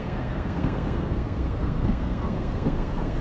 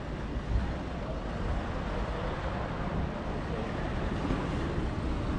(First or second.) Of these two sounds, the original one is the second